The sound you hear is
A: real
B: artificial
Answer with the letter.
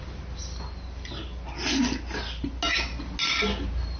A